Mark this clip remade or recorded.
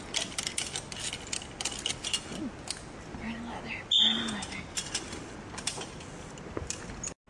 recorded